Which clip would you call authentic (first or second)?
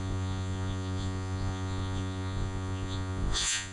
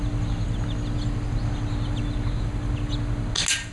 second